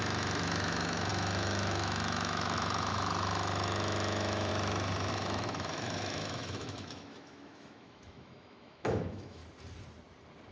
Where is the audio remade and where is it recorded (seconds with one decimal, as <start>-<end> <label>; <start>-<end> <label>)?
0.0-4.5 remade; 4.5-5.1 recorded; 5.1-9.4 remade; 9.4-10.5 recorded